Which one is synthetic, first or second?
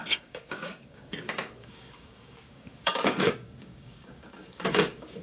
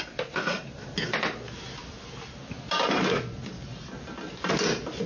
first